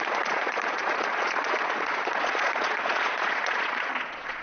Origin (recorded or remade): remade